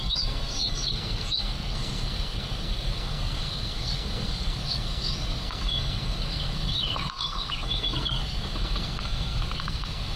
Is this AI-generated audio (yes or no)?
yes